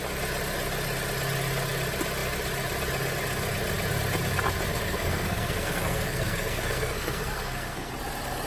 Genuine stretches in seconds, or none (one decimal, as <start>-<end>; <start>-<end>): 0.0-4.7; 7.9-8.5